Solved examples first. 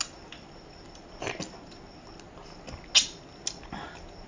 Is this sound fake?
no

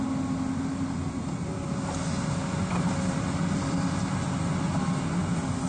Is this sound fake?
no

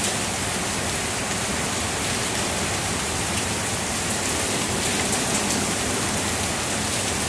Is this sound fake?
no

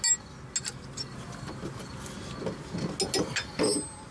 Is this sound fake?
no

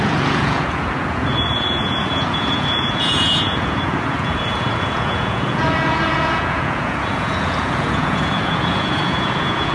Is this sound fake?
yes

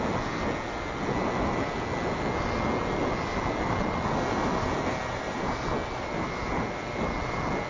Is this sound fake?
no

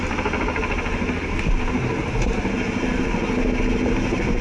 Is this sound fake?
no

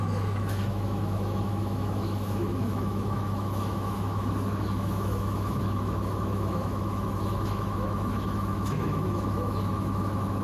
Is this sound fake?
yes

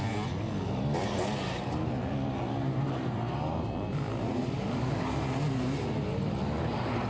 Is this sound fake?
no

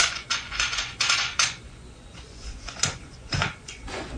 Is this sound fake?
yes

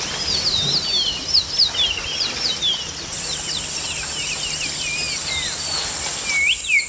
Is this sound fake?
no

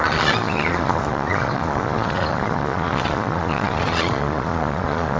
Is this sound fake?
yes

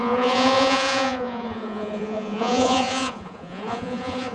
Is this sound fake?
yes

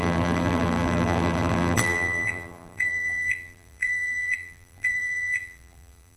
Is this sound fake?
yes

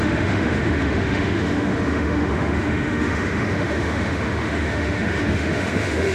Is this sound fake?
yes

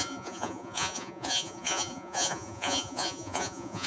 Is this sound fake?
yes